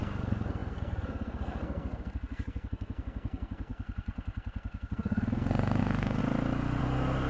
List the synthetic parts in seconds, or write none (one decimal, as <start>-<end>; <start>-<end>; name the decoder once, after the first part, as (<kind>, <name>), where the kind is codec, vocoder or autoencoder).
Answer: 0.0-6.2 (codec, SNAC); 6.8-7.3